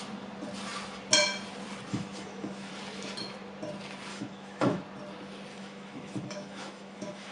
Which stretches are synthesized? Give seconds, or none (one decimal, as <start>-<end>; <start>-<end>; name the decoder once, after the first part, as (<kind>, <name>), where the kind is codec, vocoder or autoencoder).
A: 1.9-2.7 (autoencoder, DAC-VAE); 4.1-4.8; 5.5-7.3